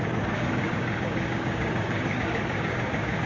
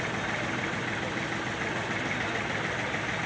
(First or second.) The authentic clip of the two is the second